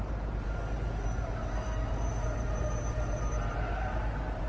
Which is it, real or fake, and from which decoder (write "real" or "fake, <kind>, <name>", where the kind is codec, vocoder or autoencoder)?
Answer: fake, vocoder, BigVGAN v2